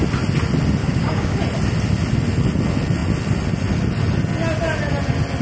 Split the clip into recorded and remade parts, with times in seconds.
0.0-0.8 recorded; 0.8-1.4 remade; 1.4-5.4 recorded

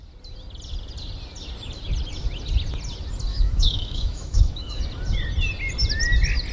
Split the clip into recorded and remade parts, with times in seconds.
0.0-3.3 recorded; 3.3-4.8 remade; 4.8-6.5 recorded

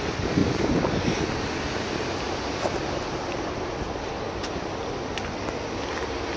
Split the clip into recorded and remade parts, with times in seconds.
0.0-6.4 recorded

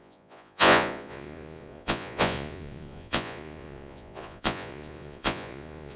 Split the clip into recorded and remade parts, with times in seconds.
0.0-6.0 remade

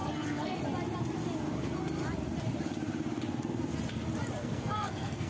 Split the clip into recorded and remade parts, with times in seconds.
0.0-0.6 remade; 0.6-4.4 recorded; 4.4-5.3 remade